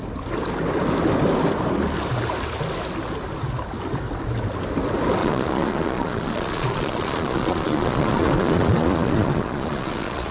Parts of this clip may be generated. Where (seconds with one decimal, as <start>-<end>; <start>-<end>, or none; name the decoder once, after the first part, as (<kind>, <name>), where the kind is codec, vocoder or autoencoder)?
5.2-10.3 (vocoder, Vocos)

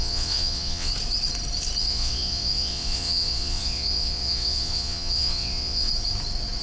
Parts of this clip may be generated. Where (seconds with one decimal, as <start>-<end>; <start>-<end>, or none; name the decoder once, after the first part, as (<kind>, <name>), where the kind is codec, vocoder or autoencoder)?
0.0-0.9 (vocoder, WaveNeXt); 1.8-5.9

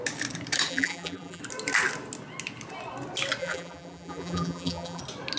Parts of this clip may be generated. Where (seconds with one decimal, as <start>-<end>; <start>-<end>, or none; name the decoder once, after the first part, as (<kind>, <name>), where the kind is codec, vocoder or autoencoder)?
0.7-1.4 (vocoder, BigVGAN v2); 3.4-5.0

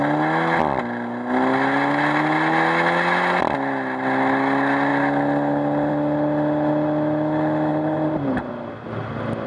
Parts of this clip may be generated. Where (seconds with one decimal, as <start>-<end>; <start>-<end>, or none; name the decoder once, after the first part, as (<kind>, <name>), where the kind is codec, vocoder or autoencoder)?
7.7-8.5 (vocoder, BigVGAN v2)

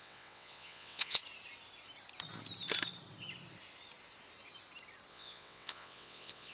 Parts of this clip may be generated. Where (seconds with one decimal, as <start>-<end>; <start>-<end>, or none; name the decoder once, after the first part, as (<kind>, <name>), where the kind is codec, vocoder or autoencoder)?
0.0-1.2 (vocoder, WaveNeXt); 5.1-6.5

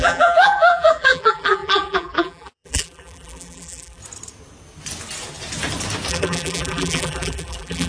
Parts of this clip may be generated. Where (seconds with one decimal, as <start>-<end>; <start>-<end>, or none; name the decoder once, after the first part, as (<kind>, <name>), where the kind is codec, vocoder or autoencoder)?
0.0-4.0 (vocoder, BigVGAN v2); 6.1-7.9